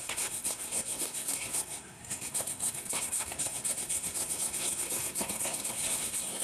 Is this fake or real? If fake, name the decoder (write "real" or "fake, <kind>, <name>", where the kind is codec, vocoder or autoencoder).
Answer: fake, codec, SNAC